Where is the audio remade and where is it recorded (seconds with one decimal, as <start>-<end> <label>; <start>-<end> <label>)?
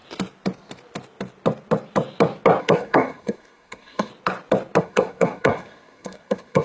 0.0-2.6 recorded; 2.6-4.1 remade; 4.1-4.8 recorded; 4.8-6.6 remade